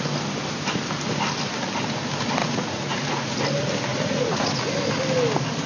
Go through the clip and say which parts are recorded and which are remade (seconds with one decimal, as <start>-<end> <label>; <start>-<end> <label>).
0.0-2.4 recorded; 2.4-3.4 remade; 3.4-3.9 recorded; 3.9-4.6 remade; 4.6-5.7 recorded